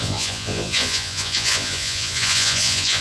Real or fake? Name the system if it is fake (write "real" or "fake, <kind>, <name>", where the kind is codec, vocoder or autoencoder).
fake, vocoder, Vocos